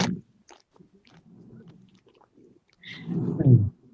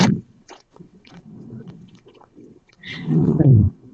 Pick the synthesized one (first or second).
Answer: second